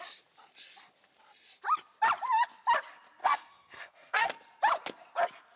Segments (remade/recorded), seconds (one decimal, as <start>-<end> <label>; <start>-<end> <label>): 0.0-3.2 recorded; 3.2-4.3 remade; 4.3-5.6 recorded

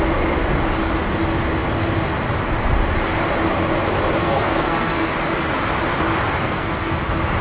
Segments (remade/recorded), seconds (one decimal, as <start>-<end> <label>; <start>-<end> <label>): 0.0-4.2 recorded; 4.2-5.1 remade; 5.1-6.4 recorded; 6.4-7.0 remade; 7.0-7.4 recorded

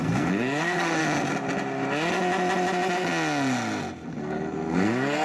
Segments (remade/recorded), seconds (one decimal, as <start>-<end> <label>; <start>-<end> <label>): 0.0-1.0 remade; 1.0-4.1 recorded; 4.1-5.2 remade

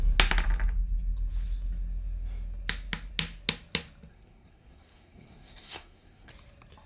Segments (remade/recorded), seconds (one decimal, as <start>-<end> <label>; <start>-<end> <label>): 0.0-4.1 recorded; 4.1-6.3 remade; 6.3-6.9 recorded

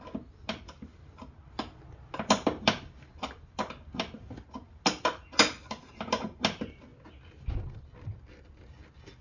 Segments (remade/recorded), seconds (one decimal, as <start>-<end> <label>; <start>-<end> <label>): 0.0-9.2 recorded

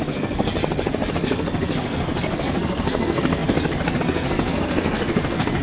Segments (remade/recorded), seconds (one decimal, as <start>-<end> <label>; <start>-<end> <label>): 0.0-0.5 remade; 0.5-1.1 recorded; 1.1-5.6 remade

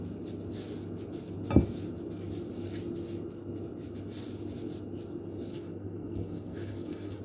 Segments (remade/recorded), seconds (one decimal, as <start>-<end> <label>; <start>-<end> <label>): 0.0-5.5 recorded; 5.5-7.2 remade